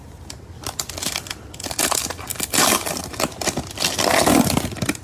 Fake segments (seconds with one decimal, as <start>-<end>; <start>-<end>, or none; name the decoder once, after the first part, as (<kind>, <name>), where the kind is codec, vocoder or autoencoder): none